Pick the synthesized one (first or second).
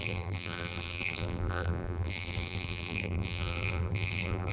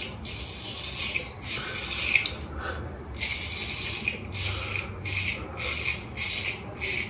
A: first